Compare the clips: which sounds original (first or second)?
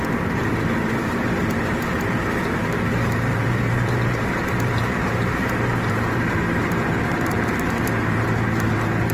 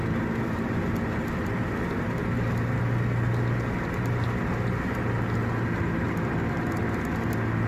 second